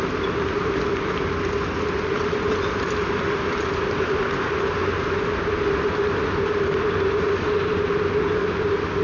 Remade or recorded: recorded